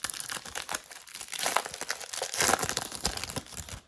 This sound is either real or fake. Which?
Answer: real